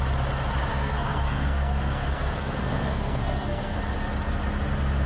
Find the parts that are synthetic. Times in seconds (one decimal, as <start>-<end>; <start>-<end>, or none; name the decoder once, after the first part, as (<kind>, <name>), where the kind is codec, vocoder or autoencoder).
0.7-3.8 (codec, SNAC)